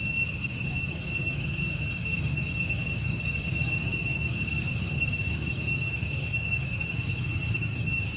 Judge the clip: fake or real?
fake